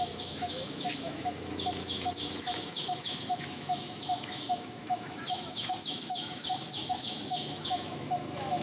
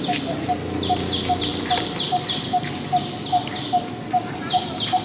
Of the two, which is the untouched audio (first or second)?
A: second